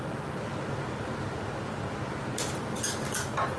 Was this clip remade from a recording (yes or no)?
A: no